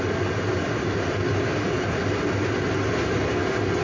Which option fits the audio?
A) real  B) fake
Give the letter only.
A